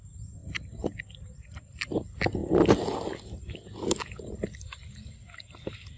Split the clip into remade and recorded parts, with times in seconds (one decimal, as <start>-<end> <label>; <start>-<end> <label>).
0.0-6.0 recorded